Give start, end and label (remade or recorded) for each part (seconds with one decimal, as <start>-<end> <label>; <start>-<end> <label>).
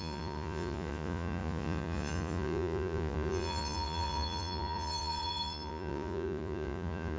0.0-7.2 remade